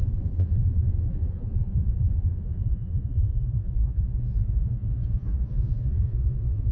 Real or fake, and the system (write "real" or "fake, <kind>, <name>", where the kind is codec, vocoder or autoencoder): fake, vocoder, Vocos